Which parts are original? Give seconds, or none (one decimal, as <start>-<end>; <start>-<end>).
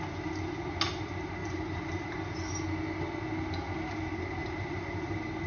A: 0.0-1.4; 2.1-4.4; 5.1-5.5